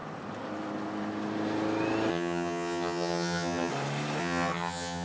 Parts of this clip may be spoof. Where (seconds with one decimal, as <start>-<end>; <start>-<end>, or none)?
2.1-3.7; 4.2-5.0